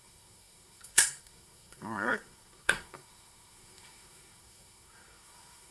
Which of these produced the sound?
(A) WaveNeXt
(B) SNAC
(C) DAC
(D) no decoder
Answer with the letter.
B